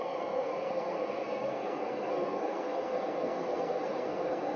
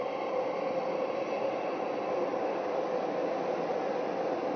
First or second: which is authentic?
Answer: second